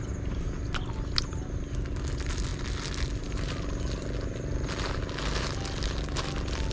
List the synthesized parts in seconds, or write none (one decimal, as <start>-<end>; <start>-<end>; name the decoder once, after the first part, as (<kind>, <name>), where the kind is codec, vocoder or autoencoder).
none